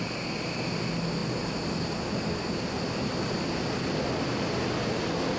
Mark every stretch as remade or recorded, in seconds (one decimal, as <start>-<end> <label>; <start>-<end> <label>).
0.0-5.4 recorded